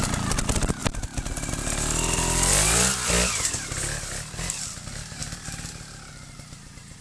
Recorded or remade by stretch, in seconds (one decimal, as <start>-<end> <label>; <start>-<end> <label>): 0.0-7.0 recorded